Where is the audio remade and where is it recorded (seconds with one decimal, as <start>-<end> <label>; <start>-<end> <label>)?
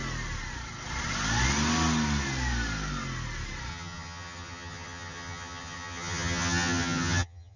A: 0.0-3.7 recorded; 3.7-7.6 remade